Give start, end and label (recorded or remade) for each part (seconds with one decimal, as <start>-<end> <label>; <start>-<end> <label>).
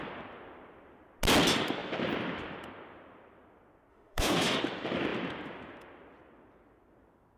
0.0-3.9 recorded; 3.9-4.6 remade; 4.6-7.4 recorded